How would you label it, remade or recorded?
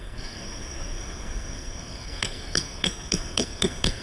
remade